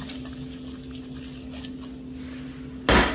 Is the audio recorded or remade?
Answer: recorded